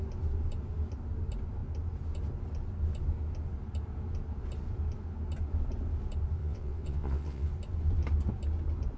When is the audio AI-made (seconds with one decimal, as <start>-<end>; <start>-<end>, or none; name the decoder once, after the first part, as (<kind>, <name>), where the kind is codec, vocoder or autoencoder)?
6.4-7.5 (vocoder, WaveNeXt)